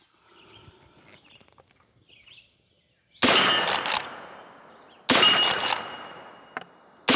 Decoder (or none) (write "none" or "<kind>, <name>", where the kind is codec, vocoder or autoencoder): none